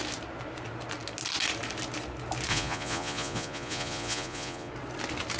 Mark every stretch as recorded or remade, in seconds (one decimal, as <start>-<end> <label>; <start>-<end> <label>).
0.0-2.5 recorded; 2.5-4.7 remade; 4.7-5.4 recorded

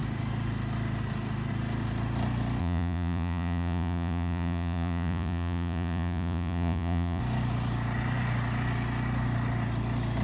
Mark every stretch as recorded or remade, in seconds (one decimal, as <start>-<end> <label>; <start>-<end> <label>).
0.0-2.6 recorded; 2.6-7.2 remade; 7.2-10.2 recorded